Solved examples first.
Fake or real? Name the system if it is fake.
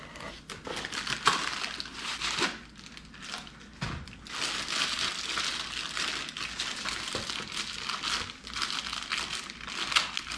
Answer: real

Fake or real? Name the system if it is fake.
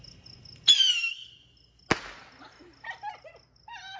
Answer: real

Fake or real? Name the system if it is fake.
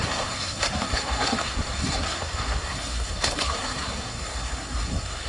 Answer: fake, codec, SNAC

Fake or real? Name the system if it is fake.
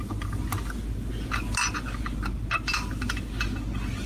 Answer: real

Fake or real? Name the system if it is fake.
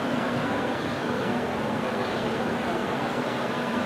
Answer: fake, codec, SNAC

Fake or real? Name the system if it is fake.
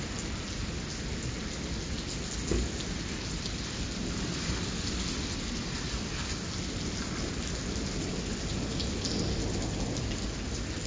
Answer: real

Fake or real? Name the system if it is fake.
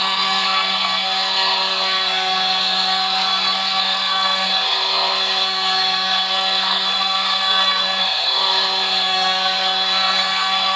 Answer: fake, codec, SNAC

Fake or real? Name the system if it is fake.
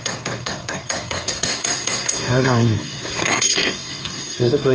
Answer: fake, codec, SNAC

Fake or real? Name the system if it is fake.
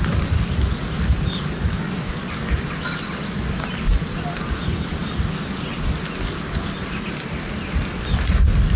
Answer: real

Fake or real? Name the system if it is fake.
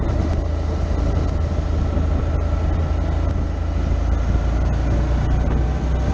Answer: real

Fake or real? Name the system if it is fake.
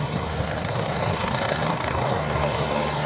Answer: fake, codec, SNAC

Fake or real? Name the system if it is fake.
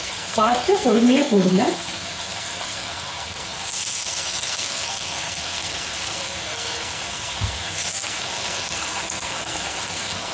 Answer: fake, codec, SNAC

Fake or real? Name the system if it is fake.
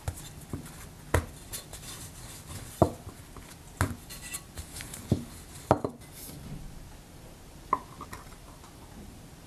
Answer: real